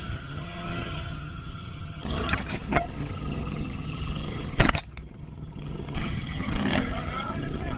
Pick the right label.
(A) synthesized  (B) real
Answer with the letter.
A